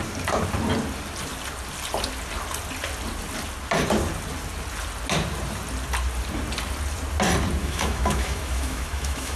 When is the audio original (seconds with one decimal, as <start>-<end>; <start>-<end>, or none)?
0.0-7.6